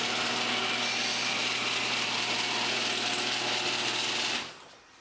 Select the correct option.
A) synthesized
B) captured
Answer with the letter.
B